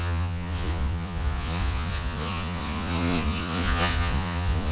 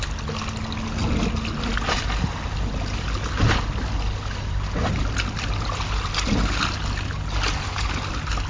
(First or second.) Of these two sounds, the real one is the second